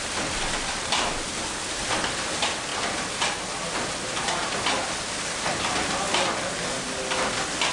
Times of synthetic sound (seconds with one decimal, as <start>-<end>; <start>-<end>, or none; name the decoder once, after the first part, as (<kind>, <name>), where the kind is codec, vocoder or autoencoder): none